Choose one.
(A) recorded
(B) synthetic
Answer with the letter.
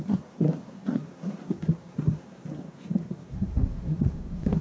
B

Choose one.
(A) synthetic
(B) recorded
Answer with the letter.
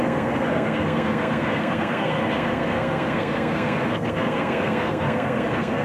A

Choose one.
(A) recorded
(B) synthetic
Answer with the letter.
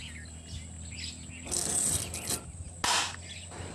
A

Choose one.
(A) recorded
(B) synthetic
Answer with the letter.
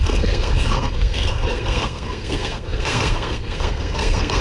B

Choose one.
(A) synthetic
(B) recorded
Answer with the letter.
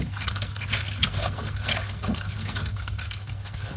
A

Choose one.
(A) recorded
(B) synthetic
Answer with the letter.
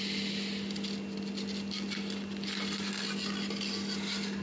A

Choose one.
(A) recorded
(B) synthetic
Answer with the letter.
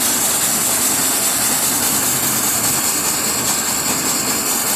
A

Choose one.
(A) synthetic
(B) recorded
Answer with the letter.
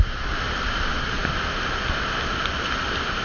B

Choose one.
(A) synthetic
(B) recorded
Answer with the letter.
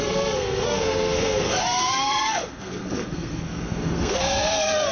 A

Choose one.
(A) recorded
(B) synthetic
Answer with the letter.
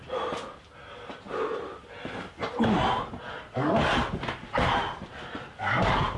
A